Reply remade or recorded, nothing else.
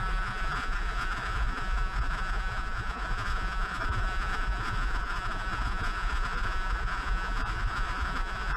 remade